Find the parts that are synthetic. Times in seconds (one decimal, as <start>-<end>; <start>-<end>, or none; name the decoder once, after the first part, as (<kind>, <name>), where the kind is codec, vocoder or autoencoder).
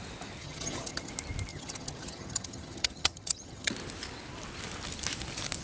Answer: 0.4-1.1 (vocoder, HiFi-GAN); 1.5-3.7